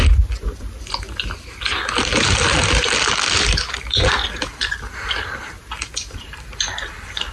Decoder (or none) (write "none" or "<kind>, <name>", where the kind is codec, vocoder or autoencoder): none